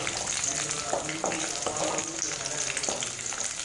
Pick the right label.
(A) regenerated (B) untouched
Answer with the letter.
B